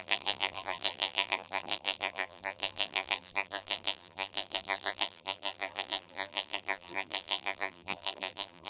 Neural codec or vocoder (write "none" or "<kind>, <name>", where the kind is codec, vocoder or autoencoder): vocoder, BigVGAN v2